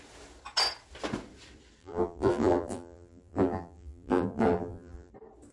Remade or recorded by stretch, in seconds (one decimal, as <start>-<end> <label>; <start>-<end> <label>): 0.0-1.8 recorded; 1.8-5.1 remade; 5.1-5.5 recorded